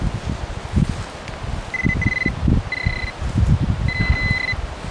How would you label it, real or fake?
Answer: real